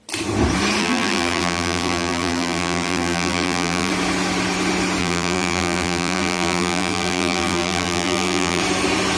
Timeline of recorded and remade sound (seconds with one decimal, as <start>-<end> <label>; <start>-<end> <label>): 0.0-0.8 recorded; 0.8-3.9 remade; 3.9-5.0 recorded; 5.0-8.6 remade; 8.6-9.2 recorded